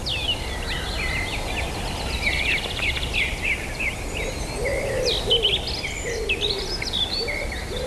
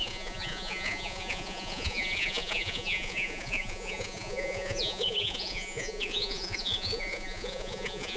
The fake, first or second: second